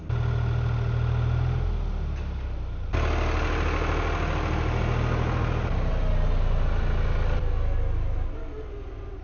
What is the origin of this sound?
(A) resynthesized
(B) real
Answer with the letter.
B